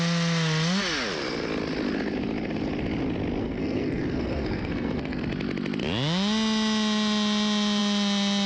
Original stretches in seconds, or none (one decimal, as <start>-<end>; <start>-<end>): 0.0-3.4; 5.2-8.5